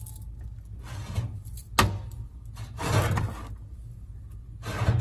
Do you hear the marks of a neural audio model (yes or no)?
no